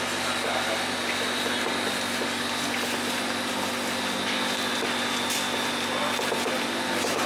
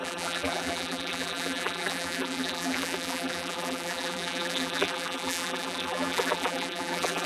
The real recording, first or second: first